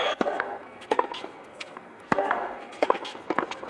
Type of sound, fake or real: fake